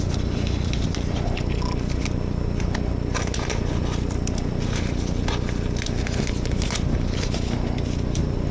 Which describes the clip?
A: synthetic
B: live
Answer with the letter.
B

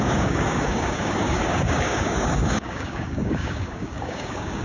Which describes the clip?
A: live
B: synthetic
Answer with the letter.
B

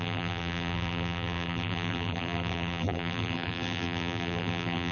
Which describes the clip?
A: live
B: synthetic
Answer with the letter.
B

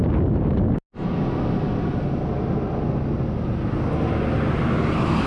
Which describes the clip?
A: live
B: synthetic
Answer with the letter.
A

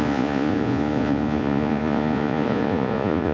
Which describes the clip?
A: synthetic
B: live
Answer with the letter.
A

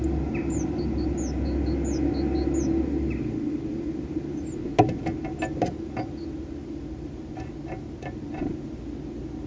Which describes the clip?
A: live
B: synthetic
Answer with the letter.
A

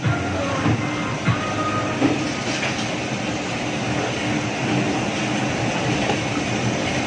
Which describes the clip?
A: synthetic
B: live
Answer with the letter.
B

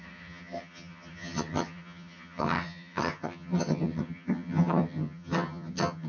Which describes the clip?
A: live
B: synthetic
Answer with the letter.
B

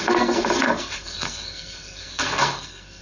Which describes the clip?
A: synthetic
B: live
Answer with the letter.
A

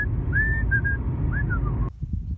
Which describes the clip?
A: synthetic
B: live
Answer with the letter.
B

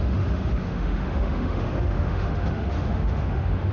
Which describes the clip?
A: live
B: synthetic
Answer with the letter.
B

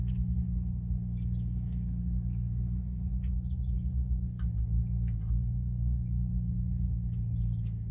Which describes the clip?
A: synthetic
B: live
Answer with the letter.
B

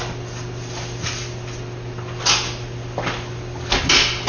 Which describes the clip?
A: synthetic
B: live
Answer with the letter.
B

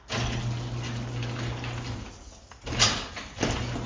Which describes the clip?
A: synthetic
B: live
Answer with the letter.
B